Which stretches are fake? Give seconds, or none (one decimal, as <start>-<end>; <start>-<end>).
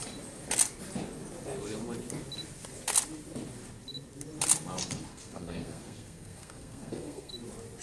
5.1-7.3